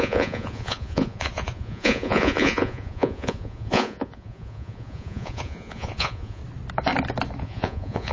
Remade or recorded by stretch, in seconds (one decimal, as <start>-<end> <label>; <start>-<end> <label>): 0.0-6.4 remade; 6.4-7.4 recorded; 7.4-8.1 remade